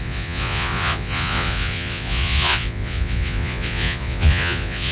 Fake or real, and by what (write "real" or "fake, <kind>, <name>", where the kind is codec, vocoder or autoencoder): fake, vocoder, Vocos